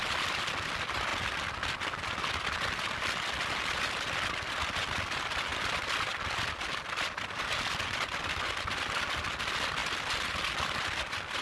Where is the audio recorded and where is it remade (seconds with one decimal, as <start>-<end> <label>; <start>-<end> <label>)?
0.0-11.4 recorded